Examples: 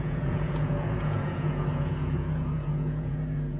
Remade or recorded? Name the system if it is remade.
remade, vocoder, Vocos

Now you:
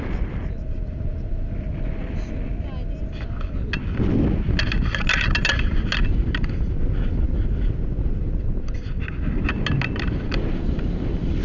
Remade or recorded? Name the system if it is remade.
recorded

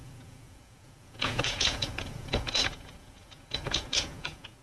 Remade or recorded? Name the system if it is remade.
remade, vocoder, Vocos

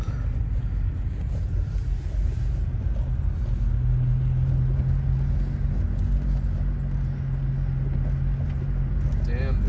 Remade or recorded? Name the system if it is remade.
recorded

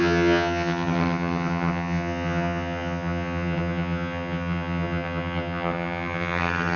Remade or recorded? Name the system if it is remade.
remade, vocoder, HiFi-GAN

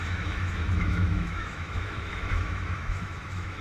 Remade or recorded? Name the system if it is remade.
remade, autoencoder, DAC-VAE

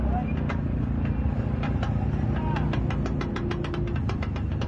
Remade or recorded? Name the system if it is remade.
recorded